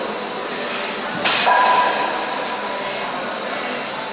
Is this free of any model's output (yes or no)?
yes